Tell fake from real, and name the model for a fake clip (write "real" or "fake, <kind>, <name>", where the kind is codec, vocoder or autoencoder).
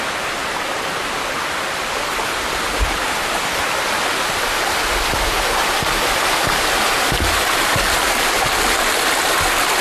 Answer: real